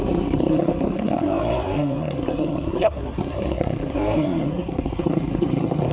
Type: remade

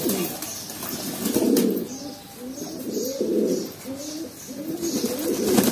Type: recorded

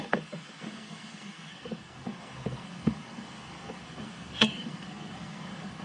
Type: remade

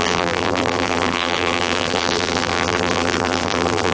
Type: remade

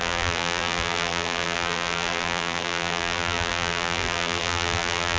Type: remade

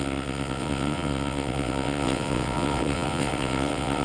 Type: remade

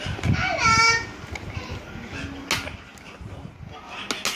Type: recorded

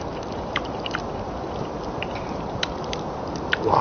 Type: recorded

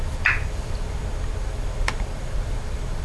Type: remade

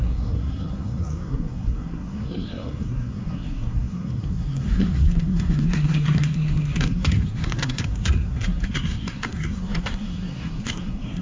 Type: remade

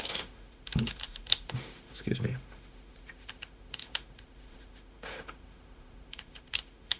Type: remade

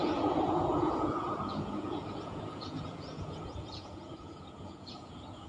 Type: remade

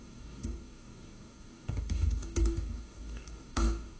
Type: remade